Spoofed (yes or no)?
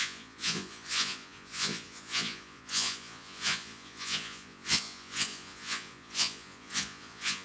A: yes